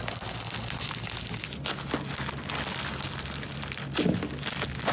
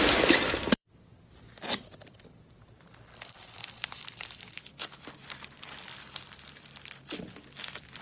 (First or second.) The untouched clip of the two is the first